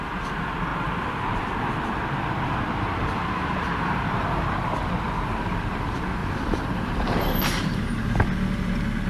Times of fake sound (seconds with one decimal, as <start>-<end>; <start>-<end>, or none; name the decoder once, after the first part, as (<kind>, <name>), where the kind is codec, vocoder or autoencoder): 3.2-4.7 (vocoder, BigVGAN v2); 6.2-7.8